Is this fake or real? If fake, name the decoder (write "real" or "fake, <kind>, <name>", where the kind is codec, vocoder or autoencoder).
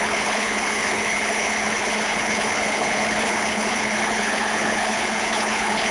fake, codec, HILCodec